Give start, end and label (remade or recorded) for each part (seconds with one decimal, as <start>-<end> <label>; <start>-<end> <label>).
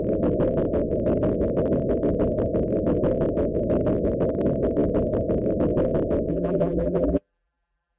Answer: 0.0-6.3 recorded; 6.3-8.0 remade